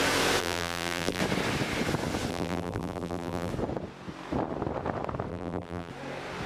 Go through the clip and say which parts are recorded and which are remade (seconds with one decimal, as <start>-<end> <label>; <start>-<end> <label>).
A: 0.0-0.4 recorded; 0.4-1.2 remade; 1.2-2.3 recorded; 2.3-3.5 remade; 3.5-5.3 recorded; 5.3-5.9 remade; 5.9-6.5 recorded